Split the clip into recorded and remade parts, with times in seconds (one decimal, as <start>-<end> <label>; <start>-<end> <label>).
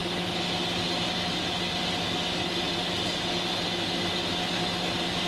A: 0.0-5.3 recorded